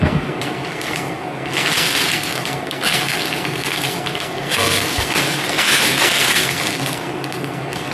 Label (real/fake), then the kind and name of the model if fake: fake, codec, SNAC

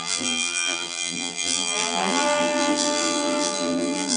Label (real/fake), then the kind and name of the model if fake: fake, vocoder, BigVGAN v2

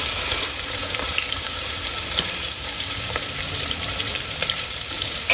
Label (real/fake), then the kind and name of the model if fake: fake, vocoder, BigVGAN v2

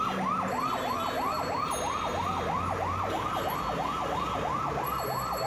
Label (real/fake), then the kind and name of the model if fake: real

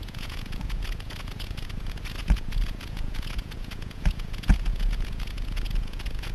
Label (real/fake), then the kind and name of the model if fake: fake, vocoder, Vocos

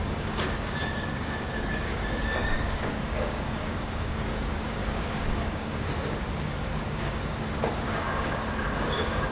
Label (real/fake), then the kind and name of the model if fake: fake, codec, DAC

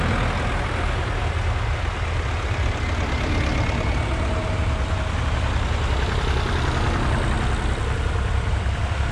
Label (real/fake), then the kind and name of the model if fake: real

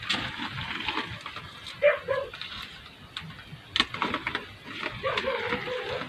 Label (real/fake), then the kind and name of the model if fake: real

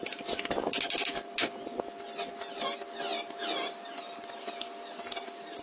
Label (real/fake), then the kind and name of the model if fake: real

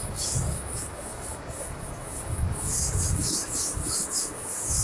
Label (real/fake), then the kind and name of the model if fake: fake, codec, DAC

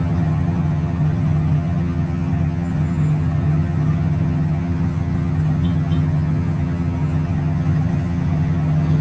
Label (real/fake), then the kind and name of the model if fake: fake, vocoder, HiFi-GAN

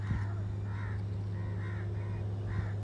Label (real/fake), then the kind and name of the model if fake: real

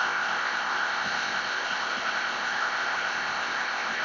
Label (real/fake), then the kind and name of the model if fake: fake, codec, ZipCodec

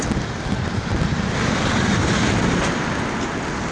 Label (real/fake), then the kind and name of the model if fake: real